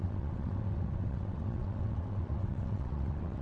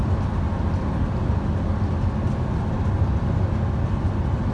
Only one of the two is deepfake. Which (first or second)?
first